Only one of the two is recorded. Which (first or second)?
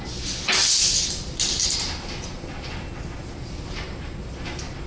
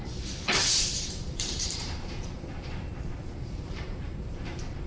first